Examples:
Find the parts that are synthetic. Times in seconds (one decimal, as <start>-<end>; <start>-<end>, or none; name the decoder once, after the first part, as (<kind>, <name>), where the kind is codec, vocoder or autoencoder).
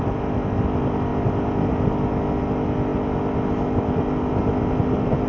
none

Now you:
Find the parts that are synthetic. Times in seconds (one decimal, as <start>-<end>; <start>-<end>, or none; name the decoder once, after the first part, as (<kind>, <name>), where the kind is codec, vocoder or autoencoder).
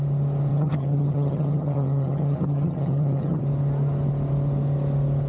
0.5-3.4 (vocoder, HiFi-GAN)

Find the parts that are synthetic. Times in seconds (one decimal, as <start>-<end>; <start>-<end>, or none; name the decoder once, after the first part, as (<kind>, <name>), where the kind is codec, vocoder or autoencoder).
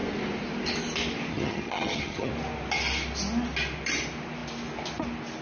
1.3-2.3 (vocoder, HiFi-GAN)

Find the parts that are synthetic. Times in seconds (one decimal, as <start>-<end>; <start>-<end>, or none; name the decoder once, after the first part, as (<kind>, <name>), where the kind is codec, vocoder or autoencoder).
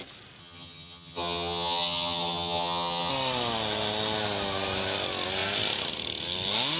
0.4-3.1 (vocoder, HiFi-GAN)